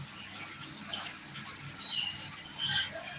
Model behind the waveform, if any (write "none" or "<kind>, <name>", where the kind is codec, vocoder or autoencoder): none